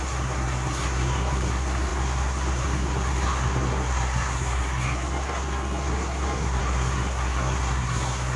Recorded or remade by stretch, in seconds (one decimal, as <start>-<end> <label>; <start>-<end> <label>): 0.0-8.4 remade